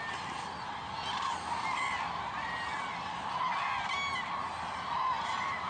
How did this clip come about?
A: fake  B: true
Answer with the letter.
B